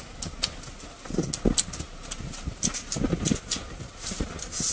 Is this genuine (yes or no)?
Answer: yes